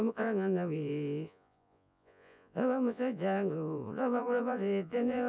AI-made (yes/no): yes